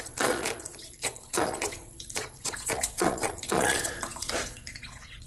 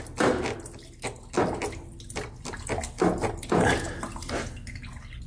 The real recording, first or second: second